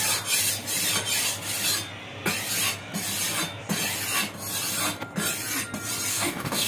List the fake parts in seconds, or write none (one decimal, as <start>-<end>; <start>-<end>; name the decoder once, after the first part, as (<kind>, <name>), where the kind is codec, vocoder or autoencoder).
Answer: 6.1-6.7 (codec, DAC)